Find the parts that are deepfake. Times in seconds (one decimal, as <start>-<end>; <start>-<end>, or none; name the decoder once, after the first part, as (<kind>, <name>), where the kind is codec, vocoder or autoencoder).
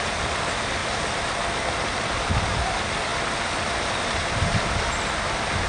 none